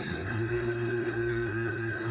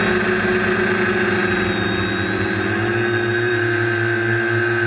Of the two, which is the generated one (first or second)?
first